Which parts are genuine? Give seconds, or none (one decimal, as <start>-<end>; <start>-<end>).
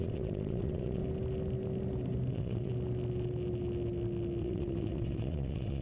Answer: 1.0-2.3; 2.7-4.4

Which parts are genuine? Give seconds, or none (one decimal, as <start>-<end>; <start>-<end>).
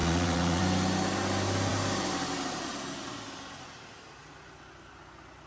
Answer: 0.6-5.5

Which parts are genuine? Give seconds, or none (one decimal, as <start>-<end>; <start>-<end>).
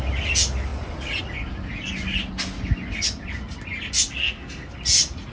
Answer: 0.0-4.2; 4.7-5.3